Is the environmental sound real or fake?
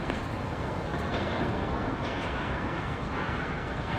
fake